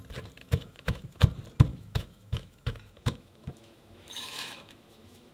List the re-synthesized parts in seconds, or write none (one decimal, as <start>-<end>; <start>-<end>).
0.4-1.2; 1.7-5.3